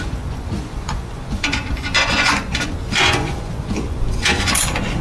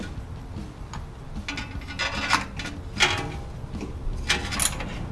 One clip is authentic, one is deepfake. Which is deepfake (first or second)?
first